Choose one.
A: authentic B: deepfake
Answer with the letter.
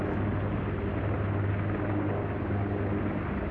A